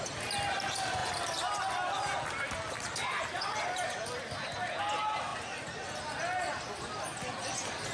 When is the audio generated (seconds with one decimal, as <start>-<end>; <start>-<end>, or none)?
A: none